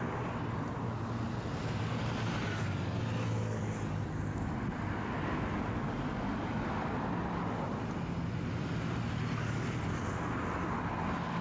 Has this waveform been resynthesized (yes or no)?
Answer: no